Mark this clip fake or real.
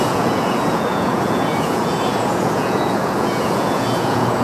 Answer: fake